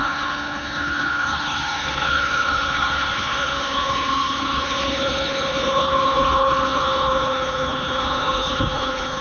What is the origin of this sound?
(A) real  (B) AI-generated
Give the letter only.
B